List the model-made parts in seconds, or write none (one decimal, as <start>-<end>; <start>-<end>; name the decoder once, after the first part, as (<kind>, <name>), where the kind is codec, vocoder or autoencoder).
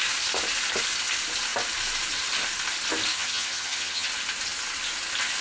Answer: 3.1-4.1 (vocoder, HiFi-GAN)